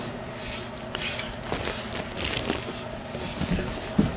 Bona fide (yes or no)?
yes